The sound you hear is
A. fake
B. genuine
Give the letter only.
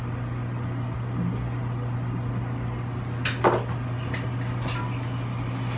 B